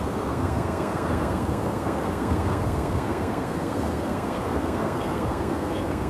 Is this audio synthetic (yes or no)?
yes